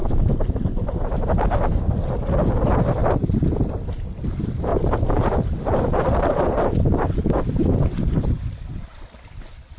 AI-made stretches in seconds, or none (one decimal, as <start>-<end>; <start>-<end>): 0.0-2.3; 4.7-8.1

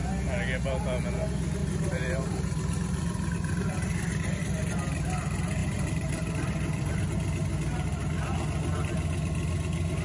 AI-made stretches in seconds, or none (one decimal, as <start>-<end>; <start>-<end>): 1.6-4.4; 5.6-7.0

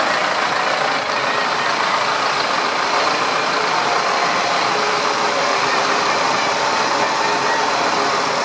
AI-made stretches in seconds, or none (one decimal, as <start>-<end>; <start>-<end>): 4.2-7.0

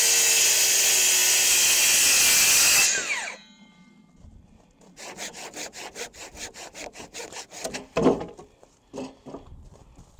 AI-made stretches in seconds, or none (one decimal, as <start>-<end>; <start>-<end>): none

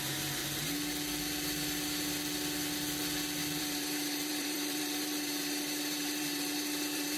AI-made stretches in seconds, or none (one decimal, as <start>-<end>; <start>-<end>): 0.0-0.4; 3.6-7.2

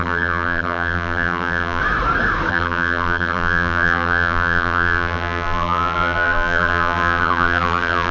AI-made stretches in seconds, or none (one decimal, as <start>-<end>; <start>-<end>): 0.0-1.8; 2.5-8.1

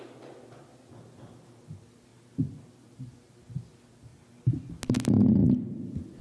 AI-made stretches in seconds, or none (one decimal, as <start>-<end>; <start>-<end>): 4.1-4.7

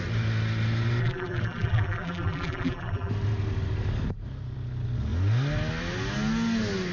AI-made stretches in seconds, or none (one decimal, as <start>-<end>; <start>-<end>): 1.0-3.1